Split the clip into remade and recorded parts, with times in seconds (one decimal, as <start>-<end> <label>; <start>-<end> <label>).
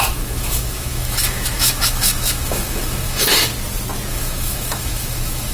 0.0-3.5 remade; 3.5-4.1 recorded; 4.1-5.5 remade